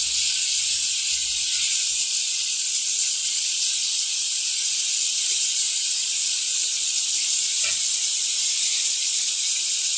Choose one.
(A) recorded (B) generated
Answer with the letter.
B